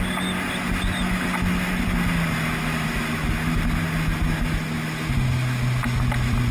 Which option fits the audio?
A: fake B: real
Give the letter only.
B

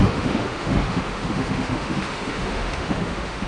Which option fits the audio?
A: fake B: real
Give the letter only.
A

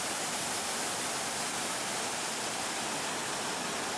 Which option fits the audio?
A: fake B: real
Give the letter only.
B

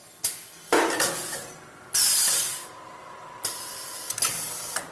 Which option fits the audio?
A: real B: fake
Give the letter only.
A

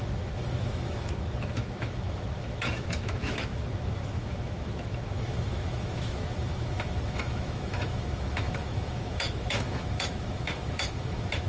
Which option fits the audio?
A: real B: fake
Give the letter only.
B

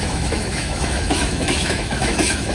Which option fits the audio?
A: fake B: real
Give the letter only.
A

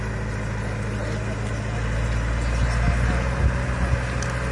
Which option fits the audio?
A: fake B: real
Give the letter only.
B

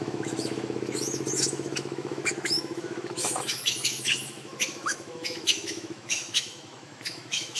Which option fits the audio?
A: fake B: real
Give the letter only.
A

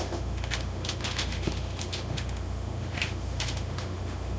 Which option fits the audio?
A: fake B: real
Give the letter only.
A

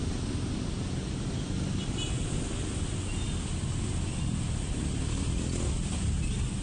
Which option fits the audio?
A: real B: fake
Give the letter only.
A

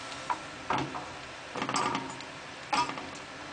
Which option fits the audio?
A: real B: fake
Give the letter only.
A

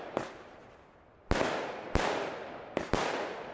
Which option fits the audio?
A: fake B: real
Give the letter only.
B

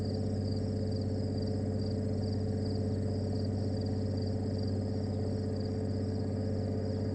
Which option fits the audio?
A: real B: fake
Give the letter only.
A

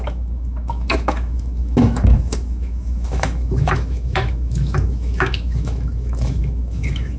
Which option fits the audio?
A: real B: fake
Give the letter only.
B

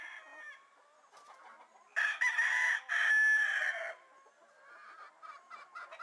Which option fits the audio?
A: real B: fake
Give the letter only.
A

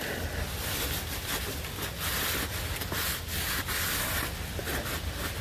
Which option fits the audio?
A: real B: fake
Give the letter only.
A